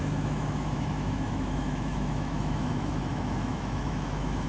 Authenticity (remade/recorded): remade